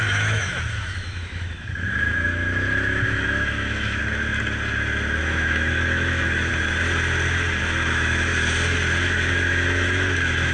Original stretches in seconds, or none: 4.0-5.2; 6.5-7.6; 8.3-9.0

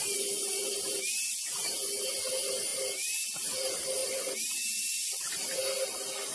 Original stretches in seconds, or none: 0.0-6.3